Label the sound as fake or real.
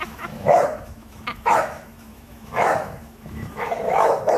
fake